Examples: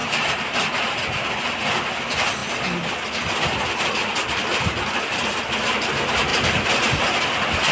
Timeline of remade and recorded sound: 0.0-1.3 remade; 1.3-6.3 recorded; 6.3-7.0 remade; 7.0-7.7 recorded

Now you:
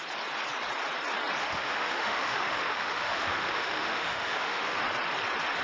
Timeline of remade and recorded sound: 0.0-1.4 recorded; 1.4-4.8 remade; 4.8-5.6 recorded

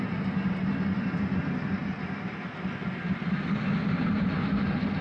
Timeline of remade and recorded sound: 0.0-0.6 recorded; 0.6-1.4 remade; 1.4-1.8 recorded; 1.8-5.0 remade

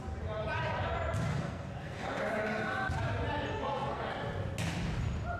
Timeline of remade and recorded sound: 0.0-1.3 recorded; 1.3-2.2 remade; 2.2-3.5 recorded; 3.5-4.1 remade; 4.1-5.4 recorded

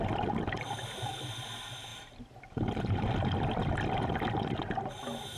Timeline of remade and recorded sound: 0.0-1.9 recorded; 1.9-3.1 remade; 3.1-3.6 recorded; 3.6-4.6 remade; 4.6-5.4 recorded